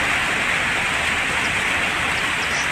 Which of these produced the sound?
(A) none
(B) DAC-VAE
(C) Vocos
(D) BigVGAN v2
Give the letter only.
A